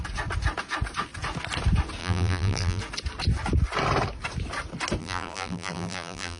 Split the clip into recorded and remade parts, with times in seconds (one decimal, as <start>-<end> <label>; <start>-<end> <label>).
0.0-2.0 recorded; 2.0-2.8 remade; 2.8-5.0 recorded; 5.0-6.4 remade